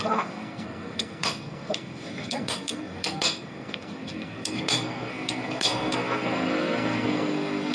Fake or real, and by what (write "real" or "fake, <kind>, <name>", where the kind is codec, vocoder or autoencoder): fake, codec, SNAC